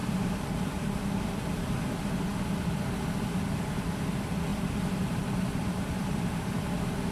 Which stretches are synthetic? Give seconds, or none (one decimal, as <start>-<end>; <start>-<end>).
0.0-0.6; 4.5-6.6